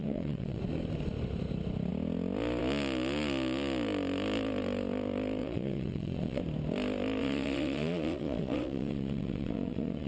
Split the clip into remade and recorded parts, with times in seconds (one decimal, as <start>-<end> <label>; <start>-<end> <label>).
0.0-0.6 remade; 0.6-5.4 recorded; 5.4-6.4 remade; 6.4-7.2 recorded; 7.2-10.1 remade